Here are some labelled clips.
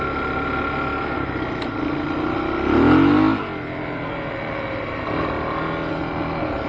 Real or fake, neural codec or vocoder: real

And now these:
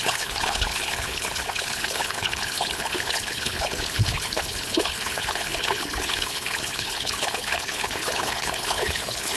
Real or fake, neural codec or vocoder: fake, codec, HILCodec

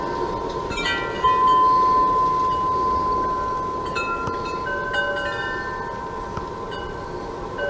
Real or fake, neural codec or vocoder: real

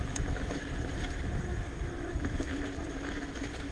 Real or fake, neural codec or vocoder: fake, autoencoder, DAC-VAE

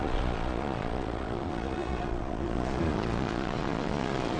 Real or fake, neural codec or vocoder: fake, vocoder, Vocos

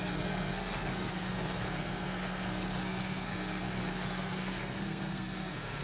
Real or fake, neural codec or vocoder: fake, codec, SNAC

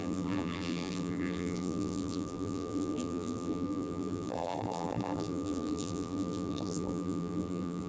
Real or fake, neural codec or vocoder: fake, vocoder, BigVGAN v2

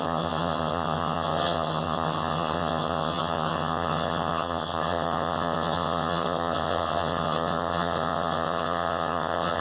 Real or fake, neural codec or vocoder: fake, vocoder, HiFi-GAN